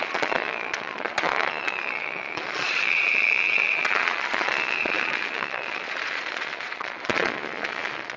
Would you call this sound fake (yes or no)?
yes